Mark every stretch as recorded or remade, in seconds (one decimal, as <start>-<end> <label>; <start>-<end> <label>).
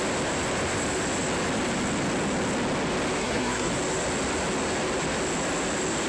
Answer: 0.0-3.2 recorded; 3.2-3.7 remade; 3.7-6.1 recorded